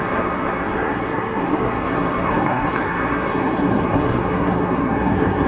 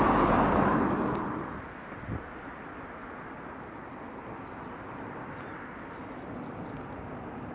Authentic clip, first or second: second